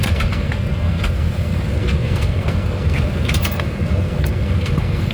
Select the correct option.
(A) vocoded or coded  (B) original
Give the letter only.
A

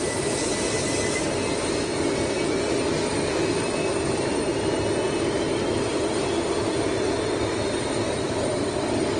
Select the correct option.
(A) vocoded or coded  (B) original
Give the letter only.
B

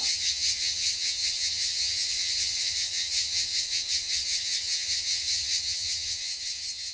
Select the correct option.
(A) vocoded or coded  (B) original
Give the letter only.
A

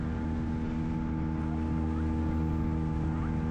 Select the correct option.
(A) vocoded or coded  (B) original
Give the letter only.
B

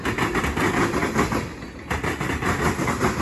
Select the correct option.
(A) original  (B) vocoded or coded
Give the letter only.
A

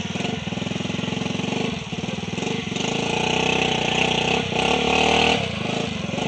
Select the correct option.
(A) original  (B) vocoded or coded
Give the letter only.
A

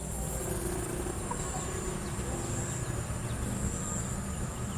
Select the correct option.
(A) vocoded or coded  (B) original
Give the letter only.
B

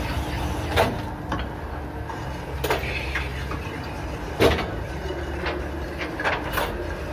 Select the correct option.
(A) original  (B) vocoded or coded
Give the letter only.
A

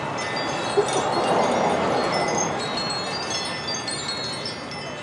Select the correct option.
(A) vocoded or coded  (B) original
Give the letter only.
B